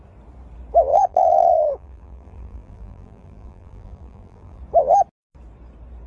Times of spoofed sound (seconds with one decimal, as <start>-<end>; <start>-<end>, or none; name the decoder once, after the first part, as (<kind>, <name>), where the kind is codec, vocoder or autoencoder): 0.9-4.6 (vocoder, BigVGAN v2)